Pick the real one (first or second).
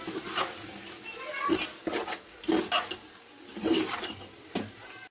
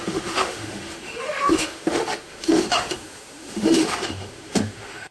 first